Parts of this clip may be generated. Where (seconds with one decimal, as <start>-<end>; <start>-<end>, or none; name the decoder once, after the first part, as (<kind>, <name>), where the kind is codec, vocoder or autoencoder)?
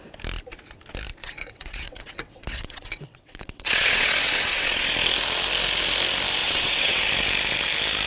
1.2-4.9 (vocoder, WaveNeXt); 6.4-7.0